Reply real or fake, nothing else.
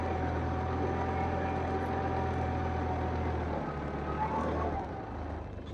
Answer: real